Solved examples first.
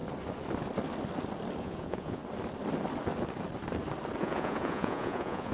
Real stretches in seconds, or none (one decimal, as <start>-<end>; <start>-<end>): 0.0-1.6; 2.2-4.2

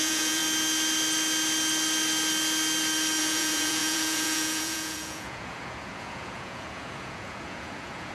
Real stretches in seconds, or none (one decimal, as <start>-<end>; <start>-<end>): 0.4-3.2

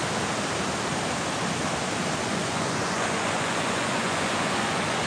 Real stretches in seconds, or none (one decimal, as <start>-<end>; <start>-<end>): 0.0-2.2

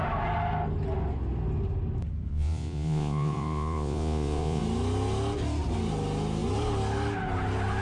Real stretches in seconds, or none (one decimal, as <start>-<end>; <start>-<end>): 0.0-2.3; 4.6-7.8

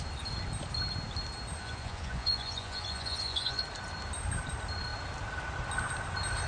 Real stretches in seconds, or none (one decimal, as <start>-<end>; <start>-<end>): 0.0-1.6; 3.6-6.5